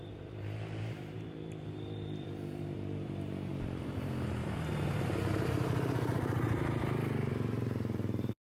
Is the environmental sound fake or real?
fake